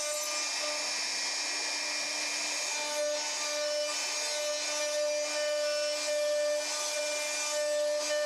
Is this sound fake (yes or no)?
no